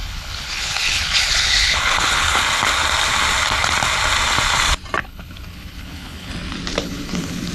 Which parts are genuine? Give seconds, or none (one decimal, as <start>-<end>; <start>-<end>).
2.4-5.0; 6.3-6.8

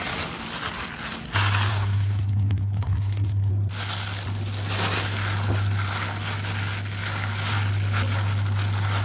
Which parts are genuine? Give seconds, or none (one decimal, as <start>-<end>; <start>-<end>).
0.0-1.7; 3.5-9.0

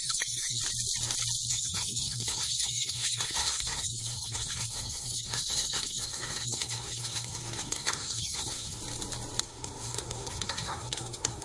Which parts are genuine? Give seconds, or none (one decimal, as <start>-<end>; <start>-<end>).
0.6-1.5; 8.8-9.4

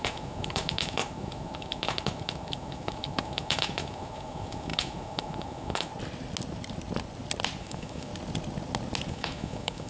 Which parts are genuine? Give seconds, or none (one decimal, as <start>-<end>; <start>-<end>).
5.9-7.6; 8.1-9.1

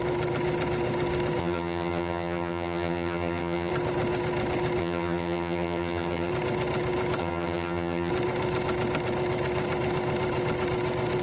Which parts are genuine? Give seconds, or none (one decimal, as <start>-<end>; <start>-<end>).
0.0-1.4; 3.7-4.8; 6.3-7.2; 8.1-11.2